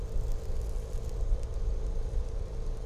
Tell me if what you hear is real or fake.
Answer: real